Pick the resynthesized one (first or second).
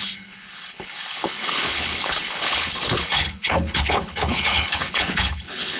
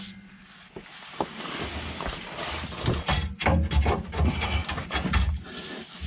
first